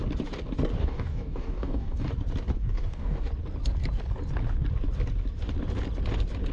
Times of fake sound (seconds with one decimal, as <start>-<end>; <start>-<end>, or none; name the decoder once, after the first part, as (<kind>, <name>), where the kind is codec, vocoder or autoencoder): 0.8-2.1 (codec, DAC); 2.6-3.3